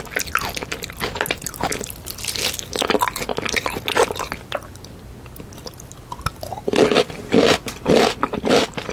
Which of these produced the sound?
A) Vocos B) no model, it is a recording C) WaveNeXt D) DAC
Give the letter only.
B